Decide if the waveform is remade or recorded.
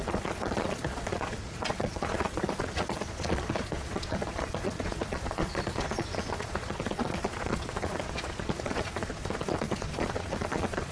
remade